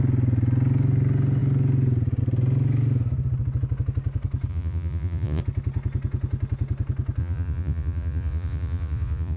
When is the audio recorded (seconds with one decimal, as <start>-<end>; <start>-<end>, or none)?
0.0-4.5; 5.4-7.2